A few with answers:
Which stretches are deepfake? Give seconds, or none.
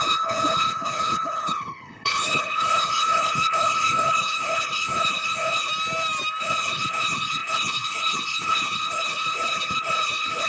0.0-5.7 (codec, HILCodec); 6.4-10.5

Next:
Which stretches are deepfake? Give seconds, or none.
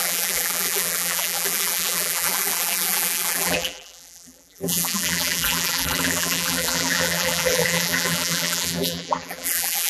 0.0-9.9 (vocoder, BigVGAN v2)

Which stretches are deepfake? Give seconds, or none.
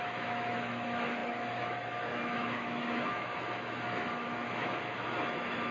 0.0-5.7 (autoencoder, DAC-VAE)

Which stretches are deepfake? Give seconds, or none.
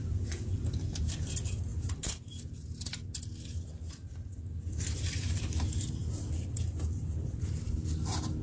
none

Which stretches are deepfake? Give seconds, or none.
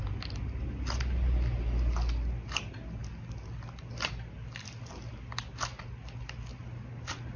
none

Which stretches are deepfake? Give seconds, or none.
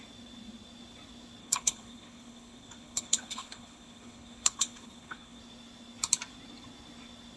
1.4-5.4 (codec, HILCodec)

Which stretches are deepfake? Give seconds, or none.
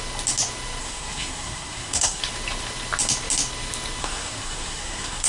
0.8-2.2 (codec, SNAC); 4.0-5.3